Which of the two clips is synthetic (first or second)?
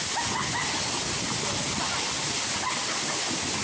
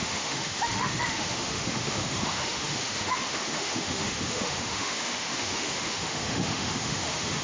second